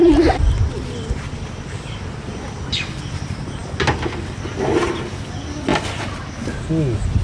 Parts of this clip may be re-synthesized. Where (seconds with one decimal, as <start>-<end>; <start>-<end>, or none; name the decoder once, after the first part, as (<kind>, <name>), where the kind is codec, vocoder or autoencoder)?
none